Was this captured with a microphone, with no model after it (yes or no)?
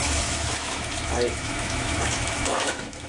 no